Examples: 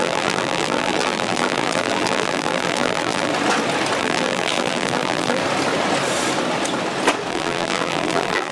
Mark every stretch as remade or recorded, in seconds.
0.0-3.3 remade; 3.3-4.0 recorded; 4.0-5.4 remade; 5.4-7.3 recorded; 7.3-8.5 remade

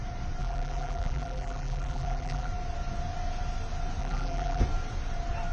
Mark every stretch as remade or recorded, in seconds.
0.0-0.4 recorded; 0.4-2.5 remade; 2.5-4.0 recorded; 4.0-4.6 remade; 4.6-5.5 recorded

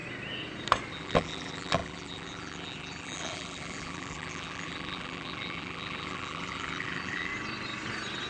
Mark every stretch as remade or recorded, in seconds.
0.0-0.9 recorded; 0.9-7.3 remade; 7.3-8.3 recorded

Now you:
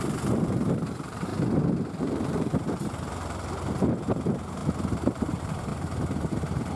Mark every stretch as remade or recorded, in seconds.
0.0-1.3 remade; 1.3-2.0 recorded; 2.0-6.8 remade